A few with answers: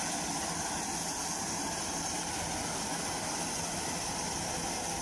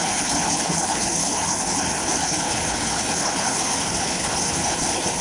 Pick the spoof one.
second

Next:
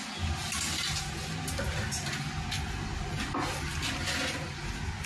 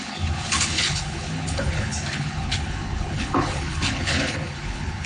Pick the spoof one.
second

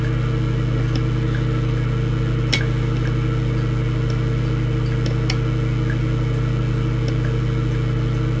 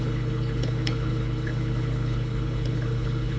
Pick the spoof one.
second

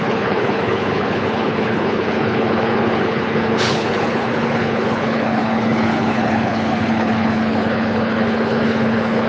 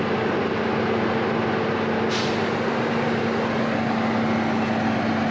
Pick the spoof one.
first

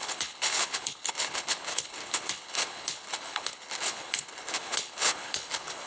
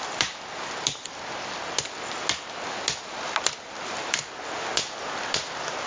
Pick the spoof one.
first